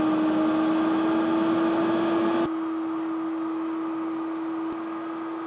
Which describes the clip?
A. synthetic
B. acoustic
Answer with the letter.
B